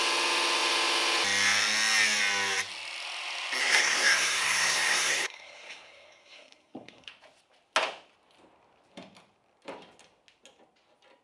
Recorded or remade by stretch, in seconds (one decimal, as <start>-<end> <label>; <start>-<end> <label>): 0.0-3.6 recorded; 3.6-7.1 remade; 7.1-11.2 recorded